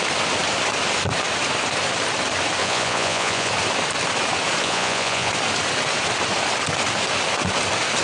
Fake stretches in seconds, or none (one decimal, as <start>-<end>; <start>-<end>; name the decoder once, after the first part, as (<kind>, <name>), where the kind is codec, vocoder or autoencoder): 2.6-3.5 (vocoder, Vocos); 4.6-5.3